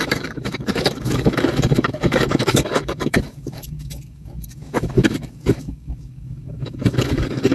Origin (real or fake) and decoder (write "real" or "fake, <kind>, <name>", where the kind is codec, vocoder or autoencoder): fake, codec, DAC